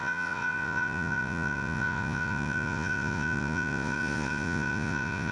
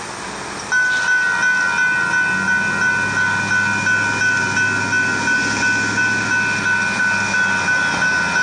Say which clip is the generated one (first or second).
first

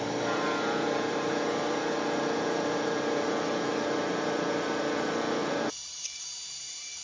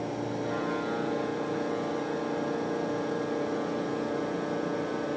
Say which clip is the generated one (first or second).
first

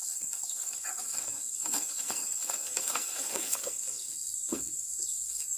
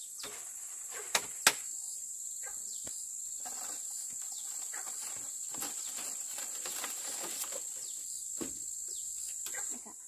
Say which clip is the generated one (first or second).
first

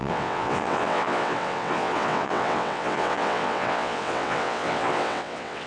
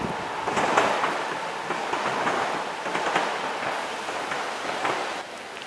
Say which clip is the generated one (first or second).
first